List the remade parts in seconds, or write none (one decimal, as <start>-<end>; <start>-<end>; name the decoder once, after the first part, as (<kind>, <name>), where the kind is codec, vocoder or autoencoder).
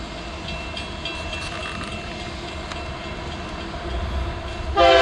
none